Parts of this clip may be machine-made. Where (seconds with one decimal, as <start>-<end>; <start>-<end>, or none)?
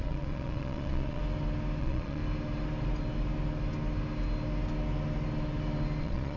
0.0-1.2; 1.8-2.2; 6.0-6.4